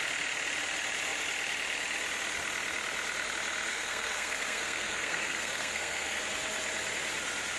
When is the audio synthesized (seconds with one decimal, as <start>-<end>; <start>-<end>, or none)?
3.7-6.2